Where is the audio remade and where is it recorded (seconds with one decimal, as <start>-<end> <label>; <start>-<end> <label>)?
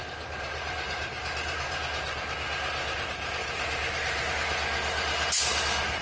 0.0-1.8 remade; 1.8-3.4 recorded; 3.4-4.3 remade; 4.3-6.0 recorded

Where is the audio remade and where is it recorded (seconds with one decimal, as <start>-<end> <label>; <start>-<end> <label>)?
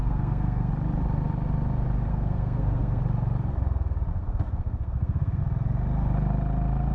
0.0-0.7 remade; 0.7-2.1 recorded; 2.1-3.0 remade; 3.0-4.1 recorded; 4.1-5.4 remade; 5.4-6.9 recorded